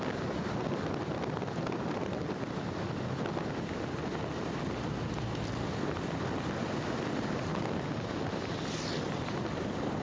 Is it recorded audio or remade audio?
recorded